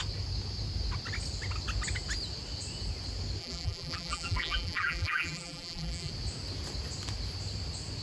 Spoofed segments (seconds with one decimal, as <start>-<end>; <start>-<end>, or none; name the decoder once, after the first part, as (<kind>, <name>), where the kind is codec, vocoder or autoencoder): 3.4-6.1 (vocoder, BigVGAN v2)

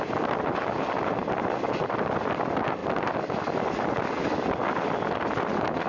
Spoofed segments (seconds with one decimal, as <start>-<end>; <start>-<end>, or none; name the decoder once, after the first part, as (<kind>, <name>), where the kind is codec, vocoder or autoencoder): none

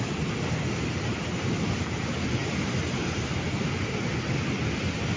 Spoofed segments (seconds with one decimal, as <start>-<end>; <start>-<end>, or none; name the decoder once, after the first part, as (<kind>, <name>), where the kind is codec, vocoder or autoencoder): none

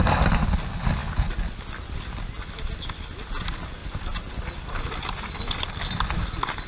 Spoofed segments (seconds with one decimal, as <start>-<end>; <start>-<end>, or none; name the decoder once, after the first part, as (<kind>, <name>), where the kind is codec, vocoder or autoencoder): none

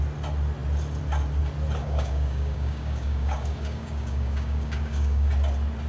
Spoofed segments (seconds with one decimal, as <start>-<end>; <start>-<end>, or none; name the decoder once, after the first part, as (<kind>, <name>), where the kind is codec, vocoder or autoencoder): 1.8-5.3 (codec, DAC)

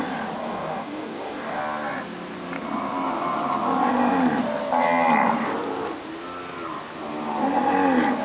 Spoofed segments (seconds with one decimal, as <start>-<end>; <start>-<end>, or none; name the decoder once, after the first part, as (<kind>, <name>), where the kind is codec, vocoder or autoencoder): 0.4-1.6 (codec, DAC)

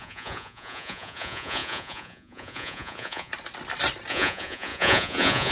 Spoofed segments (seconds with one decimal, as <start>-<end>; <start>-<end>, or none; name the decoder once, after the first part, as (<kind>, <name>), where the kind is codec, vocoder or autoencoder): 0.0-3.3 (vocoder, Vocos); 4.1-5.5

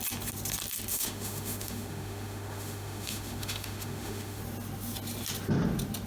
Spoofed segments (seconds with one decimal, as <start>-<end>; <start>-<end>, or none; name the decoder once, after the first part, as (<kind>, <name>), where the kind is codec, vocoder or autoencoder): 0.9-4.4 (autoencoder, DAC-VAE)